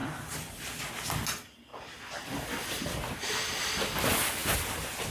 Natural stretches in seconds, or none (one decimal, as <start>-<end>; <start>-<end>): 0.0-5.1

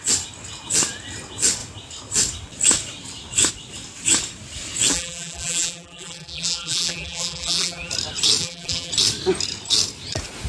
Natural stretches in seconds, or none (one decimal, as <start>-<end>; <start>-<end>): 0.0-4.9; 7.9-8.4; 8.9-10.5

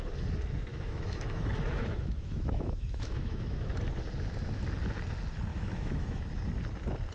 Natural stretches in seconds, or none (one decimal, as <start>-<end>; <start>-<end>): 0.0-0.7; 3.7-5.5; 6.3-7.1

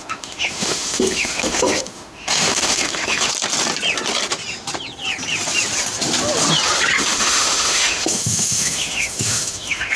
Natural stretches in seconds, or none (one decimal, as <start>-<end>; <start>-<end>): 3.3-7.0

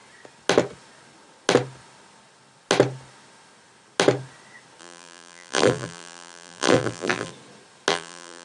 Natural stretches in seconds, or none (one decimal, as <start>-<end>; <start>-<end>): 0.0-4.8; 7.3-7.9

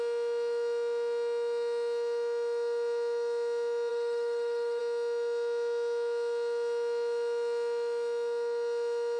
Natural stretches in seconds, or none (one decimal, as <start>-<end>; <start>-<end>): 0.0-3.9; 4.8-9.2